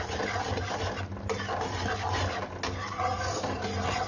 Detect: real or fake real